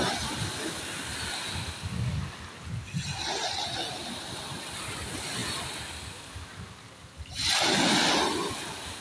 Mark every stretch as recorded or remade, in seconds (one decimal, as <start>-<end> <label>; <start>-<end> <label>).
0.0-9.0 recorded